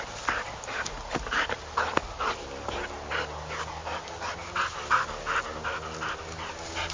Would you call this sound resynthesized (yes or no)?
no